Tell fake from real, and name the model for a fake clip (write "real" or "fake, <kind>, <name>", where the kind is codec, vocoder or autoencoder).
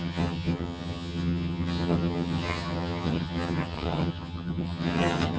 fake, vocoder, HiFi-GAN